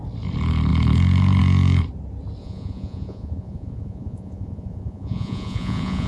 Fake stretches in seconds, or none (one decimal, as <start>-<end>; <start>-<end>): 2.4-6.1